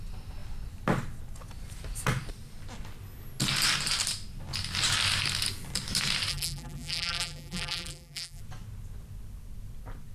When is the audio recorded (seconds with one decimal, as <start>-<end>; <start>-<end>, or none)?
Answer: 0.0-6.3; 8.4-10.1